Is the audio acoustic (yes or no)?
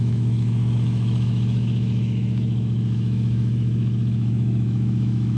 no